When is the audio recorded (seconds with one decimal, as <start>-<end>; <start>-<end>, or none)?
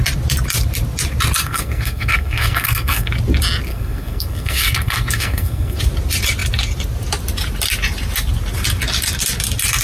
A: 0.0-1.4; 3.1-3.7; 5.8-9.8